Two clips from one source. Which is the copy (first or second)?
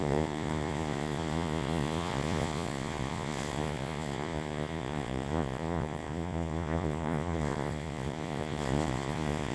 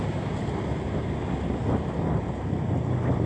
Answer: first